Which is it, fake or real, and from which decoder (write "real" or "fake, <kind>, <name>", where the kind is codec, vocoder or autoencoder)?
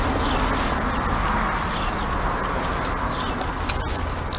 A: real